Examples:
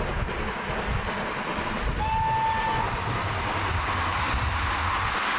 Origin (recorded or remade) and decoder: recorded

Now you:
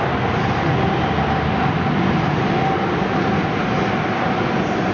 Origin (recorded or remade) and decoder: recorded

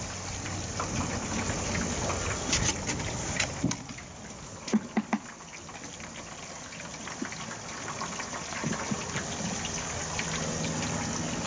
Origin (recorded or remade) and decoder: recorded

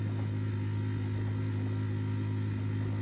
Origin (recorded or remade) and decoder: recorded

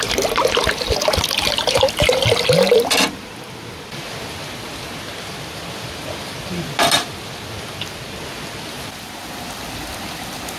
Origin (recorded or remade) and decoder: recorded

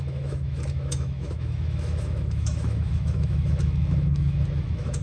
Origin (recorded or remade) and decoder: remade, autoencoder, DAC-VAE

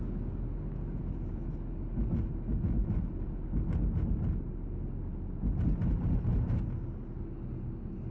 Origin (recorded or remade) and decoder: recorded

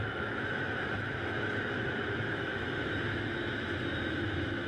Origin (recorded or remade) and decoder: remade, autoencoder, DAC-VAE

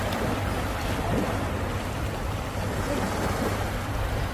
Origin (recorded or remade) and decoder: recorded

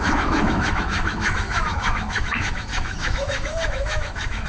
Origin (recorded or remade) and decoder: remade, autoencoder, DAC-VAE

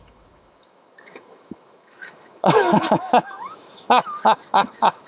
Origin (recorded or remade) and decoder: remade, autoencoder, DAC-VAE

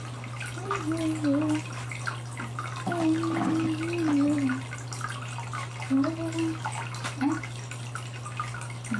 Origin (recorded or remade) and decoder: recorded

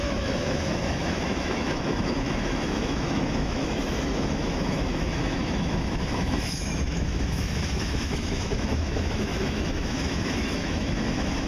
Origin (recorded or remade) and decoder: remade, autoencoder, DAC-VAE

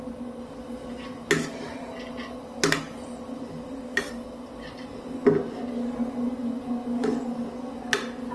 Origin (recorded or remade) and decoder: recorded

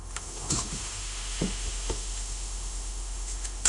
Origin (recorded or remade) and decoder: remade, autoencoder, DAC-VAE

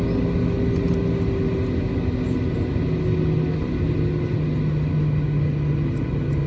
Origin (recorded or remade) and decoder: recorded